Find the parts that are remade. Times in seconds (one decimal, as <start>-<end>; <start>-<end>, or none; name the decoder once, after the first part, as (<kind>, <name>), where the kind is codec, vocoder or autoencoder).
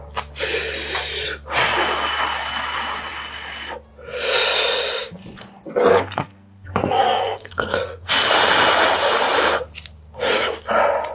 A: 5.9-8.1 (codec, SNAC)